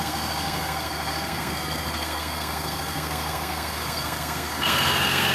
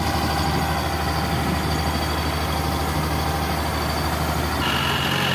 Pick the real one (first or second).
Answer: second